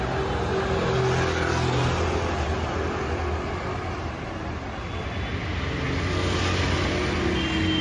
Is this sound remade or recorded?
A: recorded